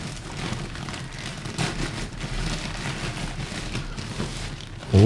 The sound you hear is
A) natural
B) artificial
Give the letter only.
A